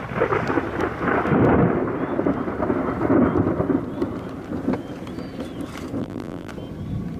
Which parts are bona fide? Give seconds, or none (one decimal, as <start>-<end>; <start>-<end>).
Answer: 0.0-6.0; 6.5-7.2